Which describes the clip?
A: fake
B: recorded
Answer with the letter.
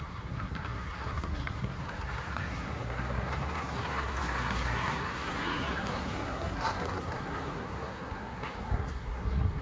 A